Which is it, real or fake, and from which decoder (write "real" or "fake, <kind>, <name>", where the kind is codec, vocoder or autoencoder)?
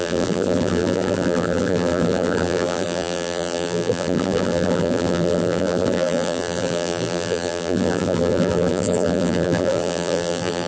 fake, vocoder, BigVGAN v2